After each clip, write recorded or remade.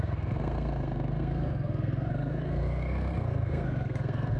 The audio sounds remade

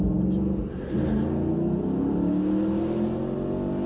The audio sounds recorded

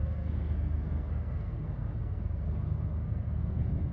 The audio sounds remade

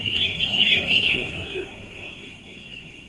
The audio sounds remade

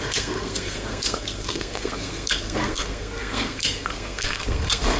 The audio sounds remade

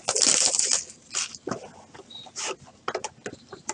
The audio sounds recorded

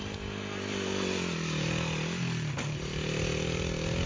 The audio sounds recorded